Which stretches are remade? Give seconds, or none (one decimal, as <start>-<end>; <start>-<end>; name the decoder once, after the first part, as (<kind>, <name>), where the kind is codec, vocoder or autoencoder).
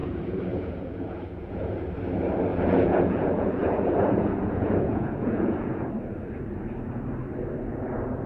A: 0.0-1.9 (vocoder, Vocos); 2.5-5.9